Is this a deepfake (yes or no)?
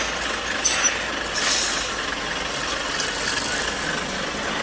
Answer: no